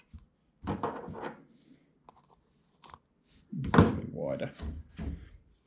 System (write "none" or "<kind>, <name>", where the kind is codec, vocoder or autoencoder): none